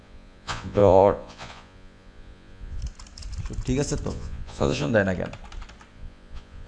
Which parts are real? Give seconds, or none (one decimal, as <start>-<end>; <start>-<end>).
2.8-4.1; 4.9-5.9